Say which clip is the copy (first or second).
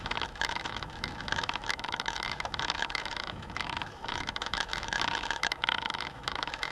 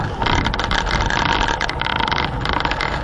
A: first